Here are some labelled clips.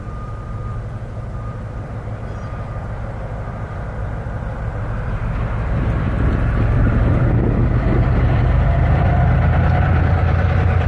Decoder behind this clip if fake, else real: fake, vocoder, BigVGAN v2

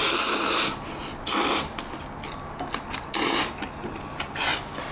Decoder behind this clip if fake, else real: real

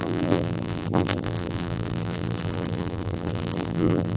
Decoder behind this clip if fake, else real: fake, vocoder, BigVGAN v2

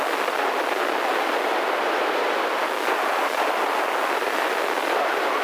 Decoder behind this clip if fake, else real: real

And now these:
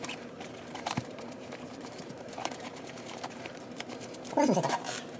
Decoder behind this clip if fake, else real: fake, vocoder, BigVGAN v2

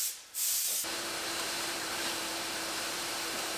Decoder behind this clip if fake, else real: fake, vocoder, BigVGAN v2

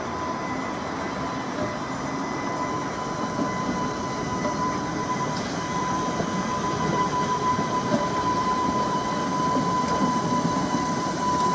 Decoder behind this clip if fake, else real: fake, vocoder, BigVGAN v2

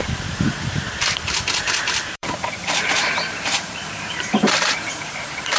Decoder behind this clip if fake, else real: fake, vocoder, BigVGAN v2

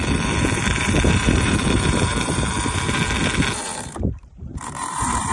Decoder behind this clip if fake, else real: fake, vocoder, BigVGAN v2